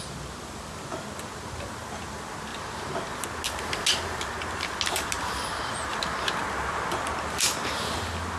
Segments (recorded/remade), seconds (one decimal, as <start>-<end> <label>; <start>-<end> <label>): 0.0-8.4 recorded